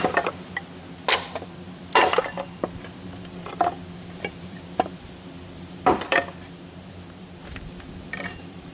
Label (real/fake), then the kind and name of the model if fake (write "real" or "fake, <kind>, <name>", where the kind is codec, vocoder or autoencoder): fake, vocoder, BigVGAN v2